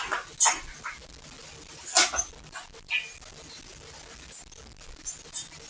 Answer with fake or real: real